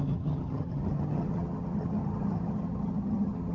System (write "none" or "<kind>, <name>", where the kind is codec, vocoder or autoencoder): vocoder, HiFi-GAN